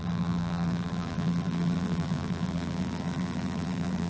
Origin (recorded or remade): remade